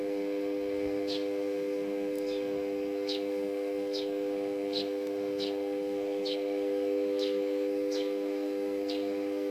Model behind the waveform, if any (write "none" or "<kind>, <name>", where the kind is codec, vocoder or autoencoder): codec, SNAC